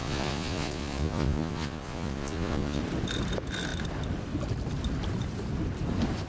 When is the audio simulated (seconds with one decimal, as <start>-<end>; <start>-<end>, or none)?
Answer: 0.0-2.8